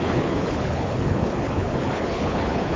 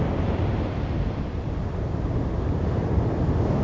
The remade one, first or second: first